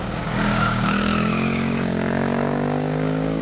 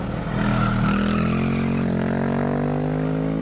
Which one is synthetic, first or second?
first